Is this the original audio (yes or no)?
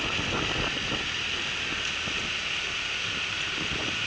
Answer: yes